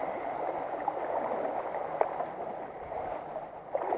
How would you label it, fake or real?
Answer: real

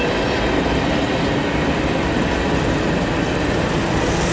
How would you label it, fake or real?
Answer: real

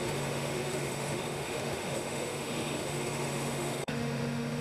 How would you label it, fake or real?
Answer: fake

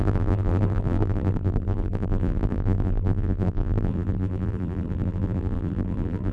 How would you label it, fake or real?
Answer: fake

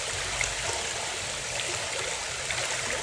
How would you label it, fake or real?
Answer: real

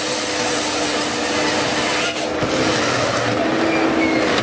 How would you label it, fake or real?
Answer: real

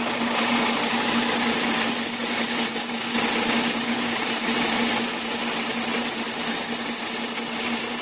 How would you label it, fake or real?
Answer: real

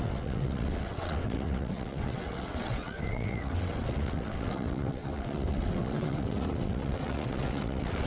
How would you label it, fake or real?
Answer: fake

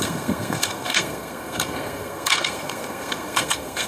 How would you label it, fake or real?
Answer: fake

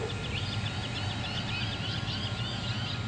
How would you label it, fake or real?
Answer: real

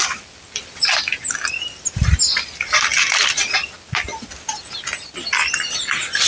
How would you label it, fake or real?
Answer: real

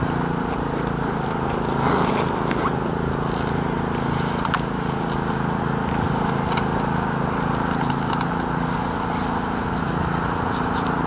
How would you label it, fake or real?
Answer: real